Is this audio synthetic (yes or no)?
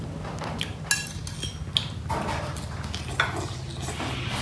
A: no